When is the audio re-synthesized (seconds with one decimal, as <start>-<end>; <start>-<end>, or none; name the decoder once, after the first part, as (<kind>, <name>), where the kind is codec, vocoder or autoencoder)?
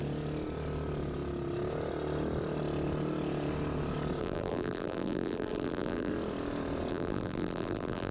4.2-6.1 (vocoder, BigVGAN v2); 6.9-8.1